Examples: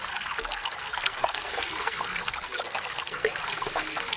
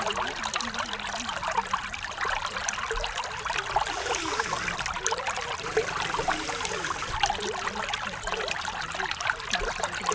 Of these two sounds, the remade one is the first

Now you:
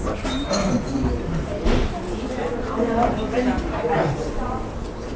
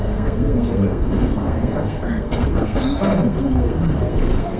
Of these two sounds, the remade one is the second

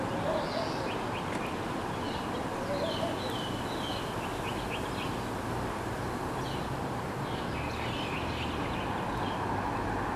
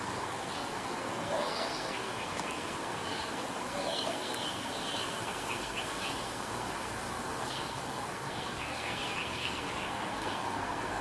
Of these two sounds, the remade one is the second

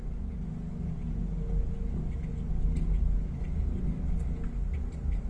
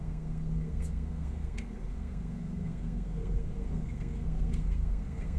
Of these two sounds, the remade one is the second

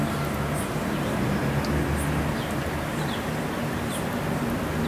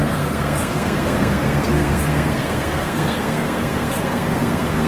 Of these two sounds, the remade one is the second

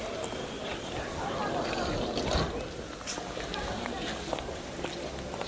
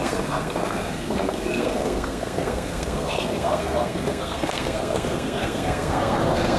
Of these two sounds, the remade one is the second